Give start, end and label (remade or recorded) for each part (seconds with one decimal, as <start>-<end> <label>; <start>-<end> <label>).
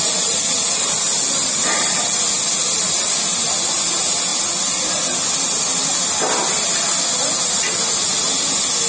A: 0.0-8.9 recorded